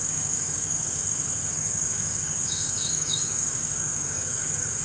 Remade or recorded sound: remade